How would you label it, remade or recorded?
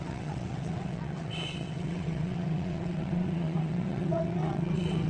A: remade